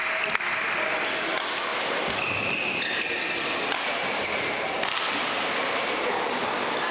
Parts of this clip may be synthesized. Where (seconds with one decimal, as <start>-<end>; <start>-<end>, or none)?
none